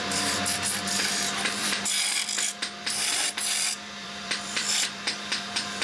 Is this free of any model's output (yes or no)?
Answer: no